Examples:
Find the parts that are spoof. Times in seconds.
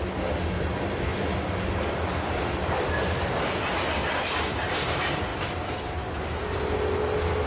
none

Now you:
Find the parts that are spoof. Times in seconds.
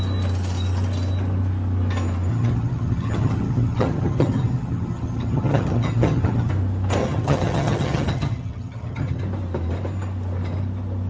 2.3-6.5; 7.0-9.2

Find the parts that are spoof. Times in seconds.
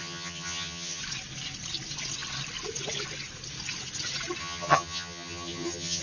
0.0-1.0; 4.4-6.0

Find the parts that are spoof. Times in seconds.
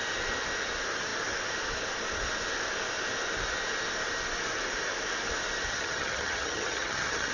5.7-7.3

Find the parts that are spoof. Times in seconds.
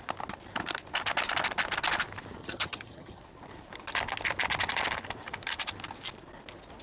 2.4-3.2